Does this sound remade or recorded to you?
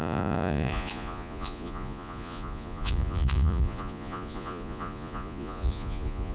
remade